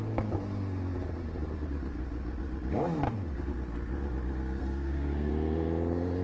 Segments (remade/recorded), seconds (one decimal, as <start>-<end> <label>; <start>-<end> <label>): 0.0-4.6 recorded; 4.6-5.3 remade; 5.3-6.2 recorded